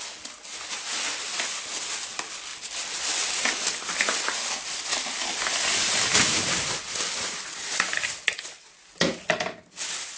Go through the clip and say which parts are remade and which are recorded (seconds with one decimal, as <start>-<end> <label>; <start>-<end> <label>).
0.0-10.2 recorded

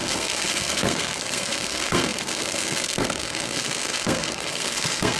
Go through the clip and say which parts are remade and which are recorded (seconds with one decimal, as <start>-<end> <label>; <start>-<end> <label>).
0.0-5.2 remade

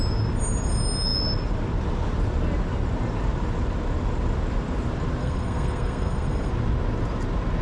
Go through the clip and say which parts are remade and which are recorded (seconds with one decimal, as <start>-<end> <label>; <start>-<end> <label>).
0.0-5.2 recorded; 5.2-6.5 remade; 6.5-7.6 recorded

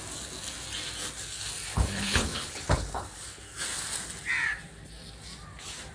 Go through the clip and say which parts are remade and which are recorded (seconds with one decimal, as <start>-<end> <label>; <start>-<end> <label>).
0.0-1.7 recorded; 1.7-3.4 remade; 3.4-5.9 recorded

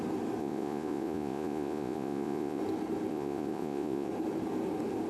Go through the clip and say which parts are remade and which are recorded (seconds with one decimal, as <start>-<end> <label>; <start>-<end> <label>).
0.0-0.4 recorded; 0.4-2.6 remade; 2.6-3.1 recorded; 3.1-4.1 remade; 4.1-5.1 recorded

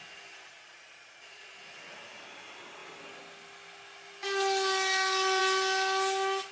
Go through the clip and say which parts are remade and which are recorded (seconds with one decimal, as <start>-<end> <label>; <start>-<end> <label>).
0.0-0.5 recorded; 0.5-1.6 remade; 1.6-6.5 recorded

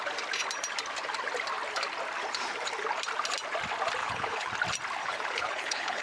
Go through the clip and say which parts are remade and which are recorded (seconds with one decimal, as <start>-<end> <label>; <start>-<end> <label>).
0.0-4.0 recorded; 4.0-4.5 remade; 4.5-5.0 recorded; 5.0-6.0 remade